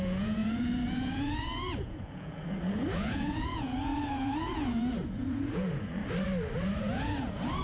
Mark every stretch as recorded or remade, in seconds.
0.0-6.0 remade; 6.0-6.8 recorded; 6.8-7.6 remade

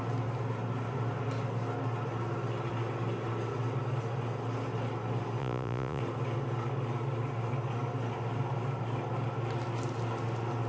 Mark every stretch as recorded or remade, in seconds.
0.0-5.4 recorded; 5.4-6.0 remade; 6.0-10.7 recorded

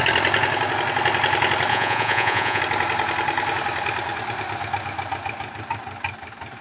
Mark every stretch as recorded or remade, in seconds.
0.0-1.7 recorded; 1.7-2.6 remade; 2.6-6.6 recorded

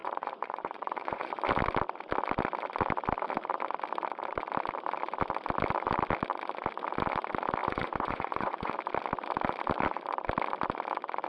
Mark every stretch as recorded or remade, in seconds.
0.0-1.3 remade; 1.3-7.6 recorded; 7.6-8.7 remade; 8.7-11.3 recorded

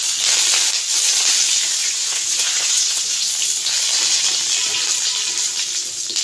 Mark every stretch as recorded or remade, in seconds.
0.0-1.8 recorded; 1.8-3.3 remade; 3.3-6.2 recorded

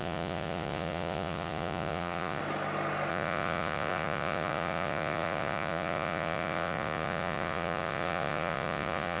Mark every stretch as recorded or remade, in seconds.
0.0-2.4 remade; 2.4-3.1 recorded; 3.1-9.2 remade

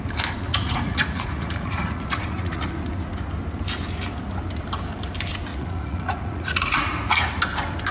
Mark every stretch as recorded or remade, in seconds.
0.0-0.5 recorded; 0.5-2.7 remade; 2.7-5.5 recorded; 5.5-7.4 remade; 7.4-7.9 recorded

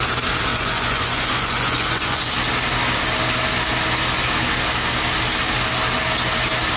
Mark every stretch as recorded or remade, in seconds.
0.0-0.5 recorded; 0.5-2.3 remade; 2.3-6.8 recorded